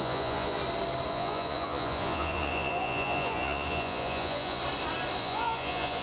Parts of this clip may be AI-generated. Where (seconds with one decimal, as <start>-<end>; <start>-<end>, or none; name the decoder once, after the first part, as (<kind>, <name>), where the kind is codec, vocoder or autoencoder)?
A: 0.0-0.6 (vocoder, Vocos); 1.1-4.6; 5.2-6.0